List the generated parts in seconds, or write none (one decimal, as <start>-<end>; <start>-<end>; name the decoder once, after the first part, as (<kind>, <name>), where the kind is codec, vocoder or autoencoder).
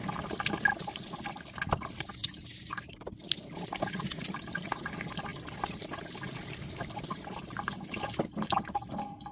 none